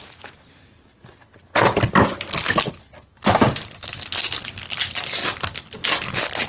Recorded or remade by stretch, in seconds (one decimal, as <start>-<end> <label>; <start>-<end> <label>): 0.0-0.9 remade; 0.9-4.8 recorded; 4.8-5.2 remade; 5.2-6.1 recorded; 6.1-6.5 remade